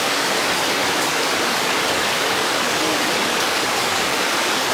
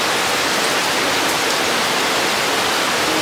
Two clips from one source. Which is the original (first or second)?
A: second